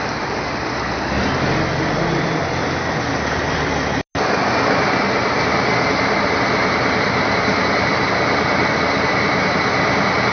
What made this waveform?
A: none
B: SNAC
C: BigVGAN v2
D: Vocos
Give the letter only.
A